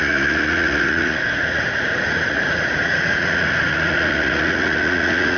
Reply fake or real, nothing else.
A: fake